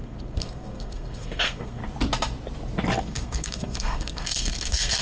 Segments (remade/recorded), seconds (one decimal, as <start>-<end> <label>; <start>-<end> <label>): 0.0-1.8 remade; 1.8-3.0 recorded; 3.0-5.0 remade